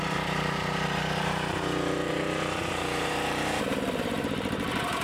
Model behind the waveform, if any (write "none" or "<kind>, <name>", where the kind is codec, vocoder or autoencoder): vocoder, BigVGAN v2